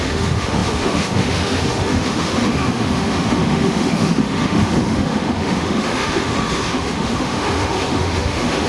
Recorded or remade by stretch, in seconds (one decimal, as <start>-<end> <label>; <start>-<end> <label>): 0.0-8.7 remade